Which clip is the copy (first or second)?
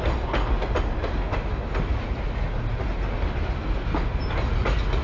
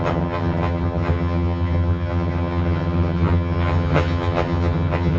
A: second